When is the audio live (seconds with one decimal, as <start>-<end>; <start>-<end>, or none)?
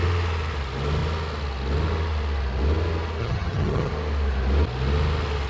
0.0-3.2; 3.9-5.5